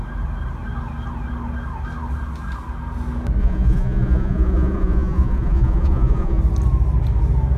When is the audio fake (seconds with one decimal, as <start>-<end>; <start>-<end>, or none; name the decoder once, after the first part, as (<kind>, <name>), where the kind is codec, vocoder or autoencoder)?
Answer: 3.4-6.4 (vocoder, Vocos)